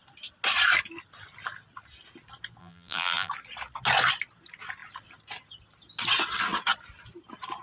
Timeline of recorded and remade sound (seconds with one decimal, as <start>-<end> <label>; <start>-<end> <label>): 0.0-2.6 recorded; 2.6-3.3 remade; 3.3-7.6 recorded